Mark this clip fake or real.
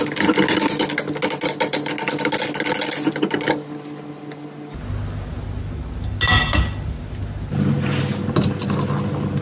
real